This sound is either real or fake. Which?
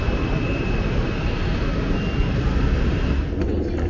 real